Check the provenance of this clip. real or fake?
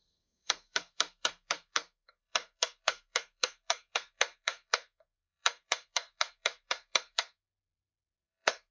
fake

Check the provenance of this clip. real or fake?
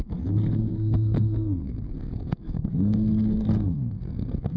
fake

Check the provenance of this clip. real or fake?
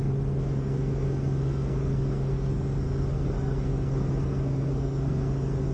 fake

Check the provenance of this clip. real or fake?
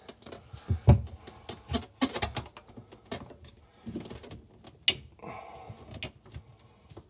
real